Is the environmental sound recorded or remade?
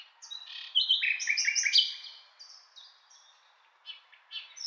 recorded